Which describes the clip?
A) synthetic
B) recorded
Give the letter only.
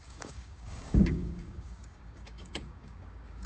A